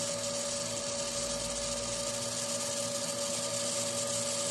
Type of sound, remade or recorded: recorded